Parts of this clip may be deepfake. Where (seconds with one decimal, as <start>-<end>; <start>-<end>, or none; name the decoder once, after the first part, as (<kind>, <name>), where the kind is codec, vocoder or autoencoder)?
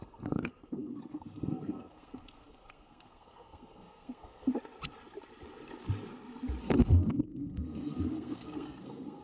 0.0-4.5 (codec, SNAC); 6.6-9.2